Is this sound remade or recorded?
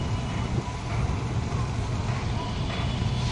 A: recorded